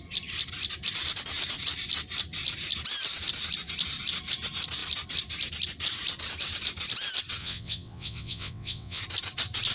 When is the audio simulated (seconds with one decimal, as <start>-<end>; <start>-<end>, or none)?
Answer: 7.4-9.0

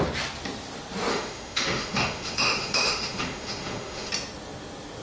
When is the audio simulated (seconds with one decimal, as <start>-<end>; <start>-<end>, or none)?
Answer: 1.1-4.1

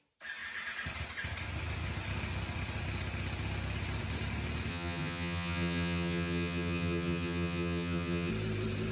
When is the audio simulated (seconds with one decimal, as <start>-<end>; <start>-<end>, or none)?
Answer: 4.7-8.3

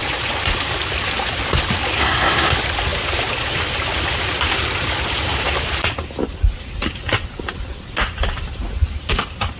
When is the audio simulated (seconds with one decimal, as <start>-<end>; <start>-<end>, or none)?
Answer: 2.0-2.5